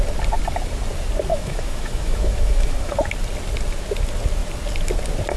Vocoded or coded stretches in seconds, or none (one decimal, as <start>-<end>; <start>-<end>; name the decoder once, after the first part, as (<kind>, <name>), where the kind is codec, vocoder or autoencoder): 1.3-2.9 (autoencoder, DAC-VAE)